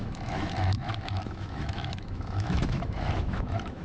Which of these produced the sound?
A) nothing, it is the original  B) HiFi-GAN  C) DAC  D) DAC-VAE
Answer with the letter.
D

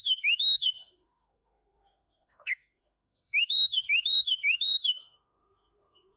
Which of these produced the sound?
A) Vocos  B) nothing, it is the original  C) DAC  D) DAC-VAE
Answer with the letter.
D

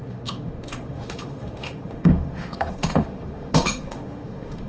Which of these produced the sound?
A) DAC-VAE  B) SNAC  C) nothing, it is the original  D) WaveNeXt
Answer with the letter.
A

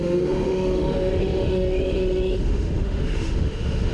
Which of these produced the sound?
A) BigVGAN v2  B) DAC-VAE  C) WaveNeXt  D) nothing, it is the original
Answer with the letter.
B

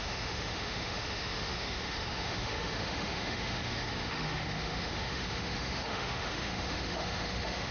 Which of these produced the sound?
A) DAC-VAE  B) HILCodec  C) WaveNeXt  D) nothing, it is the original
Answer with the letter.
A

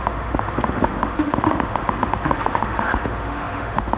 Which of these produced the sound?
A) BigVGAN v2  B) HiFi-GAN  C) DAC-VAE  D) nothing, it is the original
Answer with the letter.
C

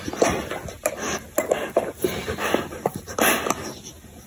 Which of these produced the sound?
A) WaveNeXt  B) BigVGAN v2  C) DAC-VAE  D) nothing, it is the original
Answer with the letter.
D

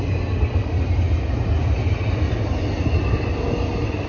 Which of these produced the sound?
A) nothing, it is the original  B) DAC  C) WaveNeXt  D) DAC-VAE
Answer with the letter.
A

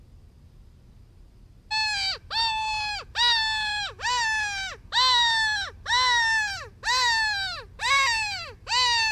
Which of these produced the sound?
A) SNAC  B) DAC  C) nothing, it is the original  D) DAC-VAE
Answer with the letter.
C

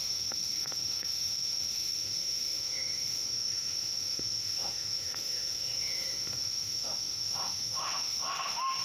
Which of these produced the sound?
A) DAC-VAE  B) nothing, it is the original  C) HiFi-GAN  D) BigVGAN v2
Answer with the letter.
A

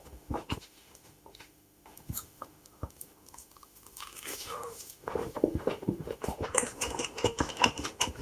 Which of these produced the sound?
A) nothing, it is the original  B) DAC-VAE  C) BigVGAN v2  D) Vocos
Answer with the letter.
B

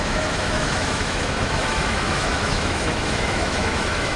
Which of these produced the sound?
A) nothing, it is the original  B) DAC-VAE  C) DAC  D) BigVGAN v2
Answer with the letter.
B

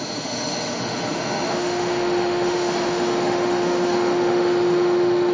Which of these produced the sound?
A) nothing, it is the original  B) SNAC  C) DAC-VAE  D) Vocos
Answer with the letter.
C